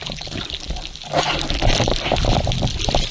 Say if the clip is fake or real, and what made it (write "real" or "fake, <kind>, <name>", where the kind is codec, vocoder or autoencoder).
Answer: real